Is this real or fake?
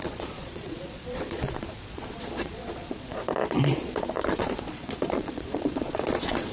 fake